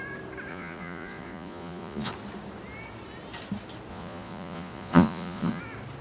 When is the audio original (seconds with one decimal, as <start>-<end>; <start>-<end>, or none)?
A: 0.0-0.5; 2.1-3.9; 5.6-6.0